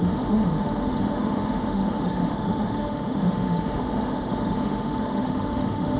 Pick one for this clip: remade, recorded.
remade